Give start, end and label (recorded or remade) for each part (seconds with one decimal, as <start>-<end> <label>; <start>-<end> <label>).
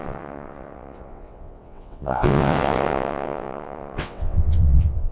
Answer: 0.0-5.1 remade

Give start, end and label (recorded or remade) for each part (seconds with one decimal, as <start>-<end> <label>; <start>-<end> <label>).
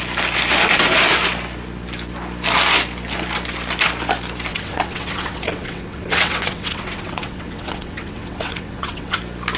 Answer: 0.0-4.5 recorded; 4.5-9.2 remade; 9.2-9.6 recorded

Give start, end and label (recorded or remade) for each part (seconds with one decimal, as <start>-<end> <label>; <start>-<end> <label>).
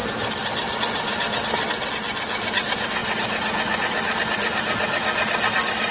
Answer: 0.0-5.9 recorded